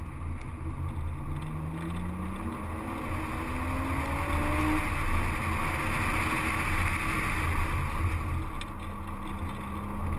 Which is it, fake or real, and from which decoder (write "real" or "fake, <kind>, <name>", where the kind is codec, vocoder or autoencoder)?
real